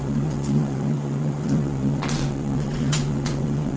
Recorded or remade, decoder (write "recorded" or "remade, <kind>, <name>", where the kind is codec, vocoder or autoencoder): remade, vocoder, WaveNeXt